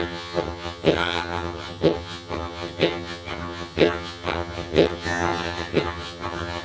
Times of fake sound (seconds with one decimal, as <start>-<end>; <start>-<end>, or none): 0.0-6.6